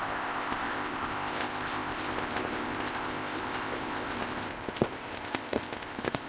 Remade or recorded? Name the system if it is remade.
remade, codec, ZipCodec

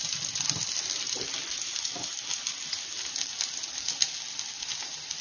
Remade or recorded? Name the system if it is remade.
recorded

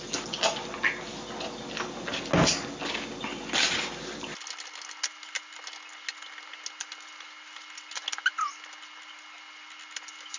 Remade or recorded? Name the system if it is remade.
recorded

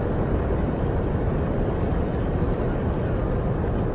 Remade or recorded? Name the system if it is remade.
recorded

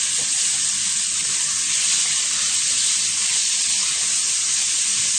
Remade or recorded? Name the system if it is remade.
recorded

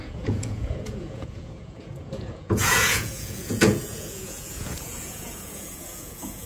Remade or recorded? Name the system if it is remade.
remade, vocoder, Vocos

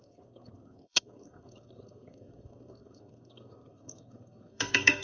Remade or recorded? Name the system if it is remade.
remade, codec, SNAC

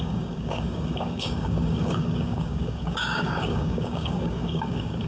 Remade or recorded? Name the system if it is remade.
remade, codec, DAC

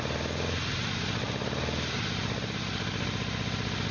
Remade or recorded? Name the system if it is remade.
recorded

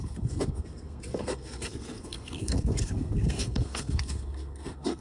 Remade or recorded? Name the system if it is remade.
remade, codec, SNAC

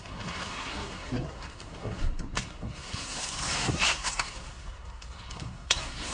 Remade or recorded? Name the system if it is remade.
remade, codec, SNAC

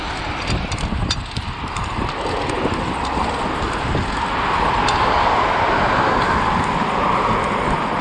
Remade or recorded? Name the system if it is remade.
recorded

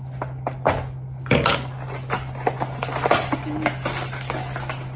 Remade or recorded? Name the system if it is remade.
recorded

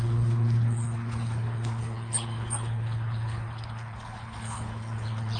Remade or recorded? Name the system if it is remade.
remade, codec, HILCodec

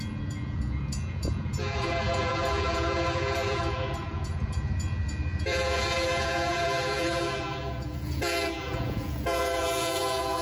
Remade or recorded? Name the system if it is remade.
remade, vocoder, Vocos